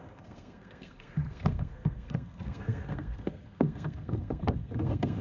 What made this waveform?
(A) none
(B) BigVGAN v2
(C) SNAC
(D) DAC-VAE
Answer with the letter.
C